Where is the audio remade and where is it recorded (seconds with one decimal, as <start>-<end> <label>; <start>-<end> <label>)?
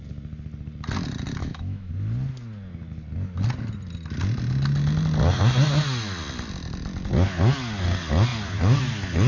0.0-1.4 recorded; 1.4-1.9 remade; 1.9-9.3 recorded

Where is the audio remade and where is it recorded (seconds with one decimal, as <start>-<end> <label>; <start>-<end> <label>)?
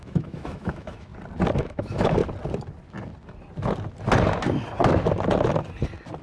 0.0-1.1 remade; 1.1-1.6 recorded; 1.6-2.2 remade; 2.2-6.2 recorded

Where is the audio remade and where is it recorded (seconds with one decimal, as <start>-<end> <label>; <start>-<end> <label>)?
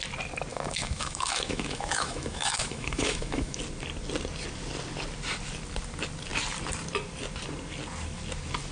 0.0-0.5 recorded; 0.5-3.6 remade; 3.6-8.7 recorded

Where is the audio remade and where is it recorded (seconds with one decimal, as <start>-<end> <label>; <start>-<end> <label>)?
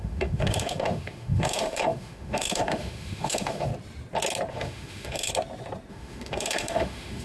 0.0-3.7 remade; 3.7-4.5 recorded; 4.5-5.3 remade; 5.3-5.9 recorded; 5.9-7.2 remade